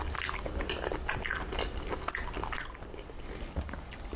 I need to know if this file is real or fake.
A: real